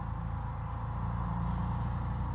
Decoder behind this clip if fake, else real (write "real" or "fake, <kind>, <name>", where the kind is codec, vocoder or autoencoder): real